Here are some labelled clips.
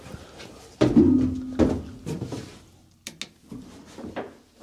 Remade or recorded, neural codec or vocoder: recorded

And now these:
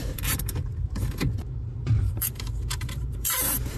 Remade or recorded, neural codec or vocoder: remade, vocoder, BigVGAN v2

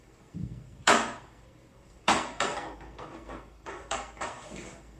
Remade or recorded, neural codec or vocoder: remade, codec, SNAC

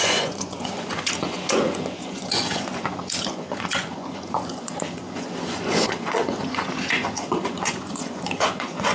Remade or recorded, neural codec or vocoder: remade, vocoder, Vocos